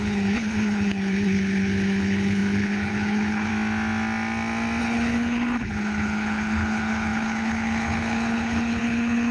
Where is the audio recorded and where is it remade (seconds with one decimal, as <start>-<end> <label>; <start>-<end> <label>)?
0.0-3.5 remade; 3.5-4.8 recorded; 4.8-9.3 remade